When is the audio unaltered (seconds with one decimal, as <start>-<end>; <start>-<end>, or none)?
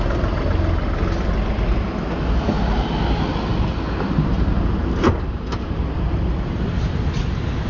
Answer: 0.0-7.7